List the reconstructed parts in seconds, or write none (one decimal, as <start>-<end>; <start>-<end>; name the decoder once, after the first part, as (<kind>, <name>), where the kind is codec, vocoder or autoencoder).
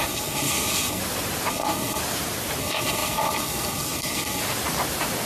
0.0-1.0 (codec, SNAC); 1.5-2.0; 2.6-4.4